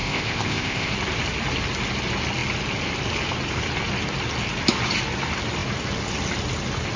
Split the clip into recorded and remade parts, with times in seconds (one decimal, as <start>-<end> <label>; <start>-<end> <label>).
0.0-0.9 remade; 0.9-7.0 recorded